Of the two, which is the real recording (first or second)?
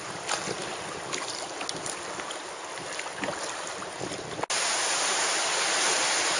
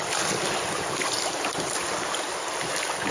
first